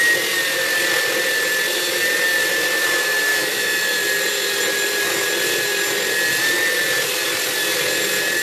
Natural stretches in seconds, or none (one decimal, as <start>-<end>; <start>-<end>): 0.0-3.3; 3.9-8.4